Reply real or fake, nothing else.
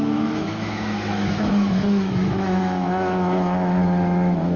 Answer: fake